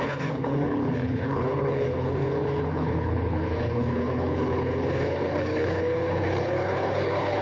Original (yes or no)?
no